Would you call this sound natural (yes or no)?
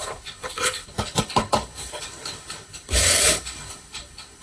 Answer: no